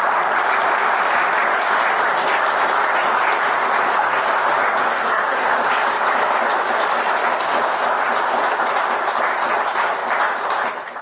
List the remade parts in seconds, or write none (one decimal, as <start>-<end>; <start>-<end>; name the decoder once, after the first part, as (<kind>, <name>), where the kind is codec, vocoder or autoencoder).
4.8-5.5 (codec, SNAC)